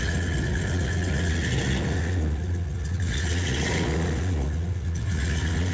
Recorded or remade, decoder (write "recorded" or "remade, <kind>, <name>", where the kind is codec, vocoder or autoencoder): remade, vocoder, Vocos